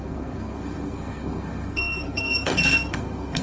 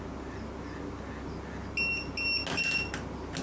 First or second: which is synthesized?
first